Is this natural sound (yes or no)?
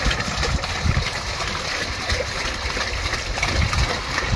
no